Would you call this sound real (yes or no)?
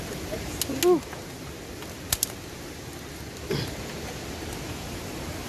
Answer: yes